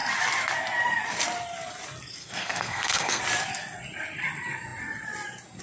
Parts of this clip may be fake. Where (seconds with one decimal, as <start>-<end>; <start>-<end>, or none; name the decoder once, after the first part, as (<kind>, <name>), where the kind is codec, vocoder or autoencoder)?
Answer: 2.2-3.2 (codec, SNAC)